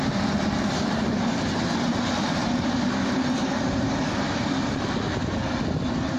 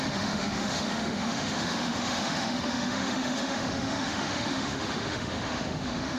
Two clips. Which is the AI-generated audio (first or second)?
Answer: second